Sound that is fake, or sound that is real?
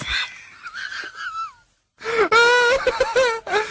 real